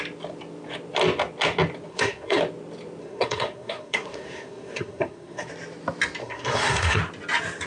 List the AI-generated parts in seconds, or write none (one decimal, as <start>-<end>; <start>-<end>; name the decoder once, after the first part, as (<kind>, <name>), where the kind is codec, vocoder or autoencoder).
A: 1.9-2.4 (codec, SNAC); 3.0-5.5; 6.2-7.0